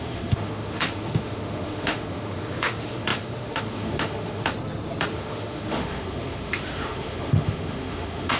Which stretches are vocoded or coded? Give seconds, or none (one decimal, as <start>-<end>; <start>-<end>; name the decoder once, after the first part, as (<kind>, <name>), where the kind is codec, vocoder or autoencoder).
0.0-4.5 (autoencoder, DAC-VAE); 5.1-8.4